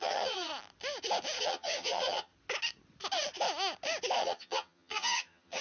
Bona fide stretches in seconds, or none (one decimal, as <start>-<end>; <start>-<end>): 0.5-1.4; 2.3-4.2